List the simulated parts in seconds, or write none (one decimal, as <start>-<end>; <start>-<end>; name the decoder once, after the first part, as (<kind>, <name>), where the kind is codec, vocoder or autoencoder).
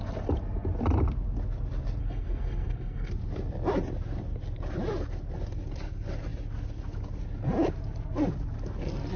2.0-3.1 (codec, SNAC)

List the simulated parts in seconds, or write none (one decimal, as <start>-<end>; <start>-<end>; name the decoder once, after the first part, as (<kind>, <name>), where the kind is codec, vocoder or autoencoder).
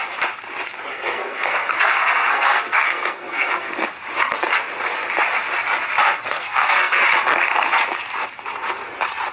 0.9-3.7 (codec, SNAC); 6.0-7.0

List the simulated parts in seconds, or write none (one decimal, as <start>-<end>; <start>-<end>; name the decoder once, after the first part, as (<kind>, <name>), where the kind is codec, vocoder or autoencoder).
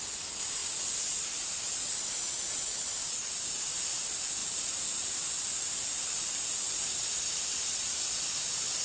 none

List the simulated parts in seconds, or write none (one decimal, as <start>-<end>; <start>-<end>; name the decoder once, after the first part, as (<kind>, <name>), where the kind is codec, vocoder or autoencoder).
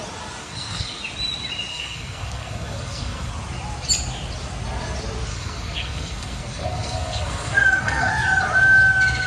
0.4-1.0 (codec, SNAC); 1.7-3.3; 5.3-8.1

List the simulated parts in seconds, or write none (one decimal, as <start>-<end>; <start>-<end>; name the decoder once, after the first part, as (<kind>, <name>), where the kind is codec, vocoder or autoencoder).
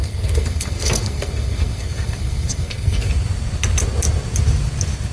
0.0-3.1 (codec, SNAC)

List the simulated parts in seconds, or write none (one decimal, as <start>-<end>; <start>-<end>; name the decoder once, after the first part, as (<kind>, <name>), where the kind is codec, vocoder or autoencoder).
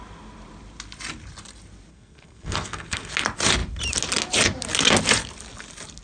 1.9-3.1 (codec, SNAC)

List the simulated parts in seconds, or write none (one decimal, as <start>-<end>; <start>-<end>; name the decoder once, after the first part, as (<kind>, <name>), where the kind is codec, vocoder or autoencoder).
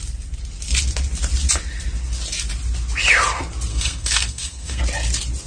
3.7-4.8 (codec, SNAC)